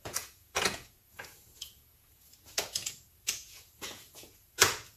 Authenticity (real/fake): fake